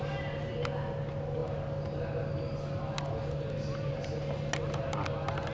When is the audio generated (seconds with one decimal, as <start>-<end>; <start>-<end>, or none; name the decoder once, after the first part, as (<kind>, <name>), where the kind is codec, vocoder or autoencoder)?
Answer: none